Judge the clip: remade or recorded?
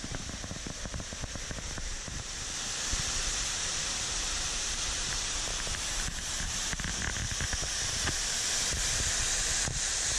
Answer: remade